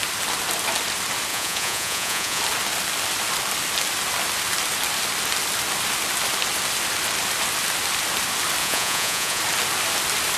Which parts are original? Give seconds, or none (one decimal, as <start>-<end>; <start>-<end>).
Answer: 0.0-1.3; 2.4-8.6; 9.4-10.4